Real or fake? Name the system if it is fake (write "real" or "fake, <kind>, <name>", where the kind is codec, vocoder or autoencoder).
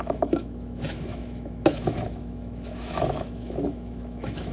fake, autoencoder, DAC-VAE